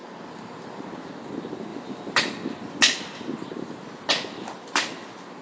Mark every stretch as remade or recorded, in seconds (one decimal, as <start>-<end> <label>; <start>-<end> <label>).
0.0-1.1 remade; 1.1-5.4 recorded